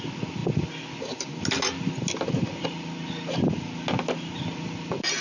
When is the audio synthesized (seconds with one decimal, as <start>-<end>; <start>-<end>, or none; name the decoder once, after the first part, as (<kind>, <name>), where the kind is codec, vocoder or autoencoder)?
none